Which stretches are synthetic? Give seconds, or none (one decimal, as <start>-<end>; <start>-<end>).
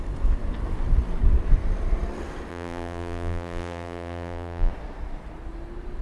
2.5-4.7